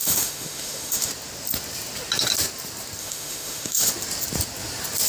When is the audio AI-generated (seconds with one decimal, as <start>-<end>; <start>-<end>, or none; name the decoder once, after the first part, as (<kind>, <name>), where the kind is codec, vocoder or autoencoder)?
0.0-1.1 (autoencoder, DAC-VAE); 3.0-3.9

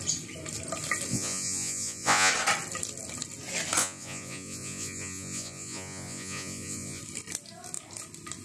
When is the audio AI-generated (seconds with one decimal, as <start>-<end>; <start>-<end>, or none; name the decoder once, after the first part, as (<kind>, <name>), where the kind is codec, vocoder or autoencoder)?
1.1-2.3 (vocoder, Vocos); 3.8-7.0

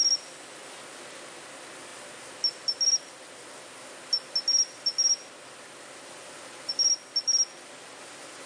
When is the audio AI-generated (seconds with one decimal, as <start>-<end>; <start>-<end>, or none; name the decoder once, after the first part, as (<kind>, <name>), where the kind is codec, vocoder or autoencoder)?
none

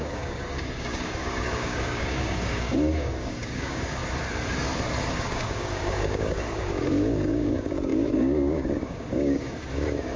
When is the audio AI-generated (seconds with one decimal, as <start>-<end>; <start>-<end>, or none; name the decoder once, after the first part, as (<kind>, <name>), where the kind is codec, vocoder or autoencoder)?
0.0-4.0 (codec, DAC); 5.1-10.2